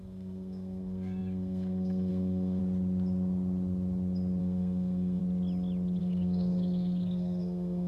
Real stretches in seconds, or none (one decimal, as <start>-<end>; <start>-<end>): 2.6-4.4; 5.2-6.0